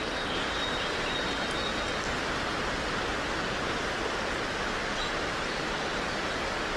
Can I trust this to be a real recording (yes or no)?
yes